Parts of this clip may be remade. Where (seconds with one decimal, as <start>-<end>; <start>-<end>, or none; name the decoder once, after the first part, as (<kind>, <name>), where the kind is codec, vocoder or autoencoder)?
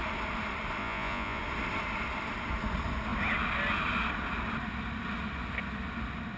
0.8-1.4 (vocoder, Vocos)